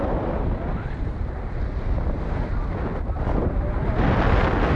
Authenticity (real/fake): real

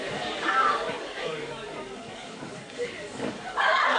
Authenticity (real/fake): fake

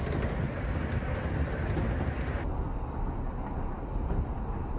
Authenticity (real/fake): real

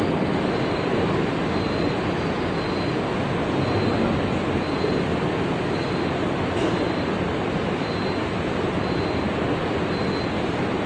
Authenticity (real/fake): real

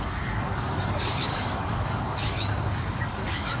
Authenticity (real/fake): fake